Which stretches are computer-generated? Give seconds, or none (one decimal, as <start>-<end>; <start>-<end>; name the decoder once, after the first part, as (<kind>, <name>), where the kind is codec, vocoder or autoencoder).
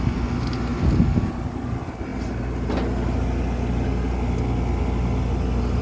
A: none